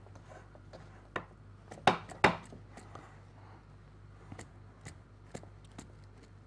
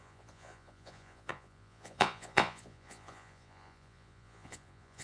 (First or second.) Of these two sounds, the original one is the first